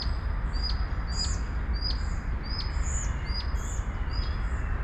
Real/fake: real